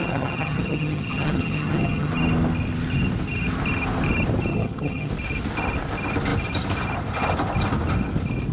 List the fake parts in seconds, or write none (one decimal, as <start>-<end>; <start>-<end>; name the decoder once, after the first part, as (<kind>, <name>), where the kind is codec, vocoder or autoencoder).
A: 0.0-2.1 (vocoder, HiFi-GAN); 4.5-5.1